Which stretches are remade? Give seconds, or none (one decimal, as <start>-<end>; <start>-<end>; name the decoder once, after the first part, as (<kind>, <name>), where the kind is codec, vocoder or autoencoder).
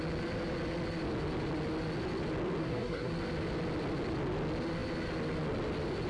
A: 2.6-3.1 (codec, SNAC)